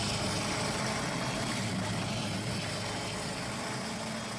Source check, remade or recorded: recorded